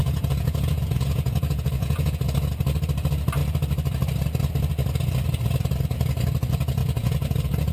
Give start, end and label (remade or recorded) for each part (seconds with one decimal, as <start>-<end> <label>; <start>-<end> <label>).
0.0-2.2 remade; 2.2-6.8 recorded; 6.8-7.7 remade

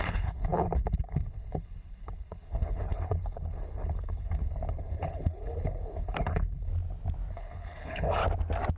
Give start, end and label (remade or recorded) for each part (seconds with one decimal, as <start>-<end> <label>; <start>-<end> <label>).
0.0-6.7 remade; 6.7-7.3 recorded; 7.3-8.2 remade; 8.2-8.8 recorded

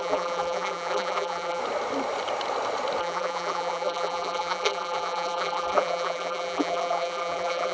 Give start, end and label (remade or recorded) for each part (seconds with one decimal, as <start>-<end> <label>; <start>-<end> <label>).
0.0-1.6 remade; 1.6-3.0 recorded; 3.0-7.7 remade

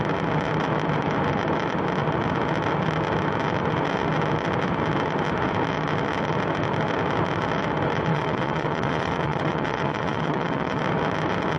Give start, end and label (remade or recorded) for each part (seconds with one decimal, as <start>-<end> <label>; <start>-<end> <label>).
0.0-8.1 recorded; 8.1-10.8 remade; 10.8-11.6 recorded

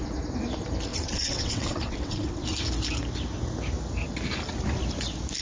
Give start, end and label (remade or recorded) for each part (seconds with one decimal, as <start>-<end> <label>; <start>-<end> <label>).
0.0-0.9 recorded; 0.9-2.4 remade; 2.4-5.4 recorded

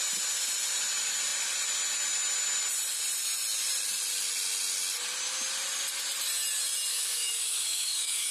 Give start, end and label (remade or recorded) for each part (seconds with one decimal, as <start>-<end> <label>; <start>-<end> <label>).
0.0-6.9 recorded; 6.9-8.3 remade